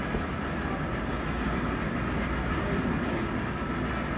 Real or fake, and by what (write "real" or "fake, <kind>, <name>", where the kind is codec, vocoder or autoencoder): real